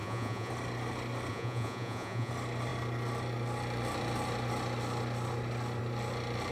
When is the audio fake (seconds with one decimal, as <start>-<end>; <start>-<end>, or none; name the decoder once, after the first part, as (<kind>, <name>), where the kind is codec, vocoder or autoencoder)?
0.0-0.5 (vocoder, Vocos); 1.3-2.3